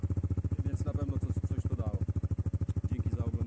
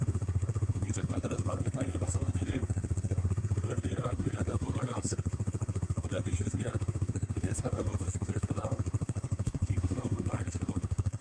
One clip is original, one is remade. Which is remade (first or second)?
second